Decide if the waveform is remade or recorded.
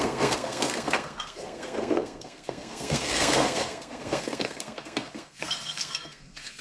remade